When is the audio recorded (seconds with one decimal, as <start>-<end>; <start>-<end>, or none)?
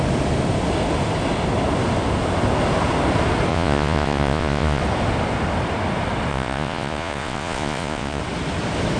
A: 0.0-3.5; 4.8-6.3; 8.2-9.0